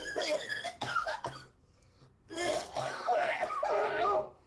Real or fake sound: fake